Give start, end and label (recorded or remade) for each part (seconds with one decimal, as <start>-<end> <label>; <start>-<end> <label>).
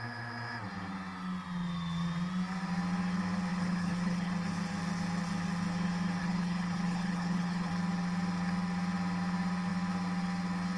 0.0-3.5 recorded; 3.5-4.3 remade; 4.3-6.2 recorded; 6.2-7.7 remade; 7.7-10.8 recorded